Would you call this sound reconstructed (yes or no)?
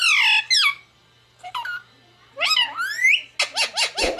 no